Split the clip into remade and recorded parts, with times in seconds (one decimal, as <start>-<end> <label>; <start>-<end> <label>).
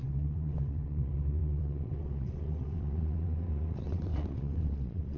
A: 0.0-5.2 remade